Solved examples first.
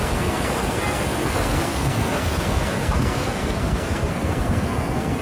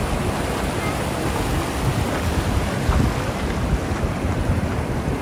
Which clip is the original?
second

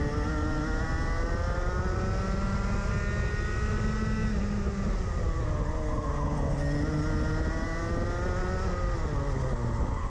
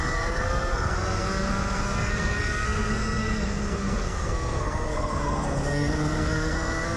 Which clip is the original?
first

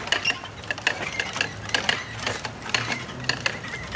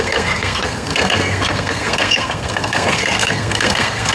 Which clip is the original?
first